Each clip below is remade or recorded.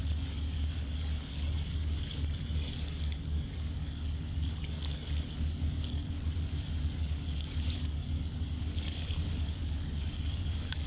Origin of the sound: remade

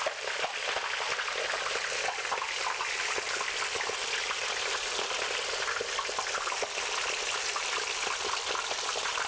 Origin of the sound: recorded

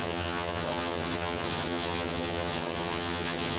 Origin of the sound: remade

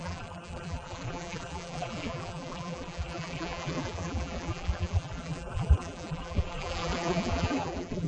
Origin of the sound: remade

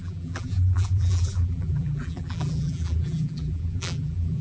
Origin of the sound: remade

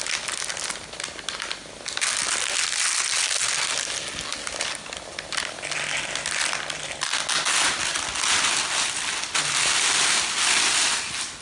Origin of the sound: recorded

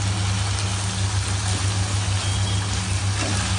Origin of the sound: recorded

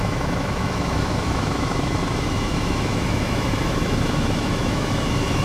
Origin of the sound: remade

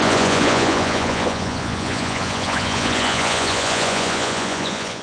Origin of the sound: remade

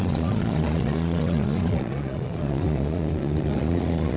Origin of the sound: remade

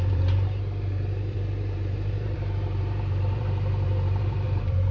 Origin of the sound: remade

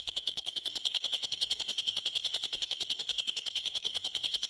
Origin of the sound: remade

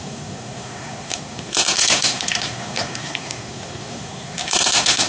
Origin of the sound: remade